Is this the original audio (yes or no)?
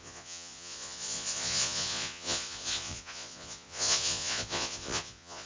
no